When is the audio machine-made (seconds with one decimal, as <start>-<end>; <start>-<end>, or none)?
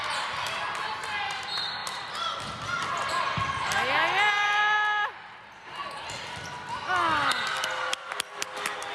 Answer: none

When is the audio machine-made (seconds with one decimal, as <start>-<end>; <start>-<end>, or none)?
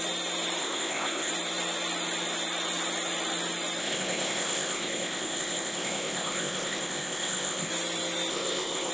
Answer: 0.6-1.3; 3.8-7.7; 8.3-8.9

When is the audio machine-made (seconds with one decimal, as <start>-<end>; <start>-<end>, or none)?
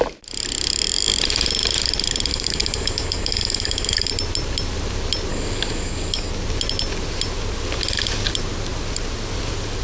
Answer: 2.3-4.1; 5.3-6.3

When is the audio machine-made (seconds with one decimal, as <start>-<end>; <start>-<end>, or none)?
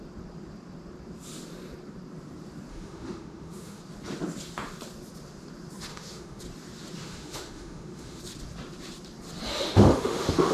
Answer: 2.7-3.8; 5.9-6.4; 7.0-8.2; 9.5-10.5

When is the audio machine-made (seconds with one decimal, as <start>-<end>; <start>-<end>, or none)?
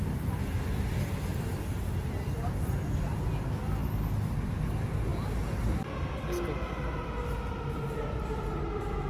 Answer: none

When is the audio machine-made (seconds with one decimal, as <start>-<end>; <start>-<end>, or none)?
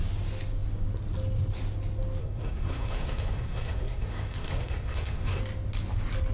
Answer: 2.2-5.4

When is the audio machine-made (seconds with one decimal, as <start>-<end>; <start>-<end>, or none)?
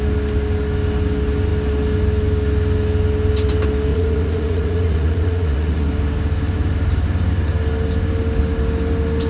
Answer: 3.9-5.9